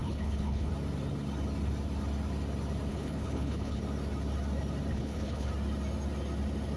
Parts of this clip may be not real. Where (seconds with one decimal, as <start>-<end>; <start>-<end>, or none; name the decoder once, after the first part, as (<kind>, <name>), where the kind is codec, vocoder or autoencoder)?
0.0-0.7 (codec, HILCodec); 2.9-3.8; 4.9-5.5